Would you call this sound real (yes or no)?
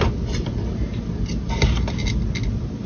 yes